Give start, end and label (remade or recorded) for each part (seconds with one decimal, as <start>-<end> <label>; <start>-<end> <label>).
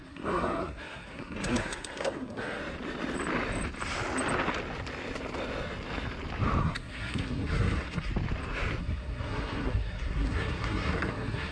0.0-2.6 remade; 2.6-6.6 recorded; 6.6-8.1 remade; 8.1-8.8 recorded; 8.8-11.5 remade